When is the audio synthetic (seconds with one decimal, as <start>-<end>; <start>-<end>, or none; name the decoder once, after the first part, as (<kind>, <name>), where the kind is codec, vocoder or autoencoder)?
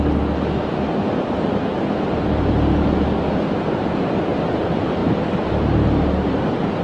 none